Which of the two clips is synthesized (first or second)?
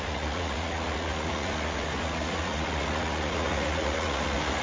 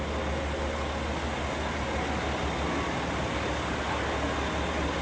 first